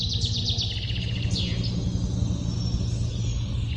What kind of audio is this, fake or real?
real